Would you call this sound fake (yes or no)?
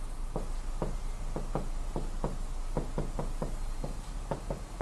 no